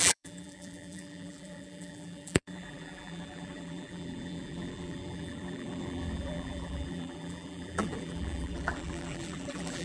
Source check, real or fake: fake